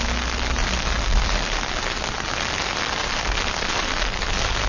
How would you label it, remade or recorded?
recorded